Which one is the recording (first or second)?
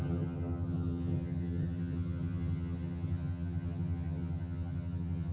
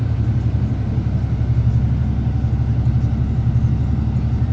second